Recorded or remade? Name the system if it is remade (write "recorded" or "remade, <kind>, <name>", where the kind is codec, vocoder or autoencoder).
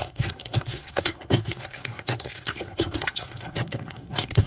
remade, codec, SNAC